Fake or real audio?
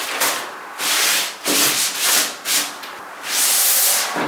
fake